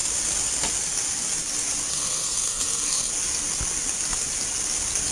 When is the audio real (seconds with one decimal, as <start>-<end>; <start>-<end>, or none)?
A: 0.0-1.9; 3.1-5.1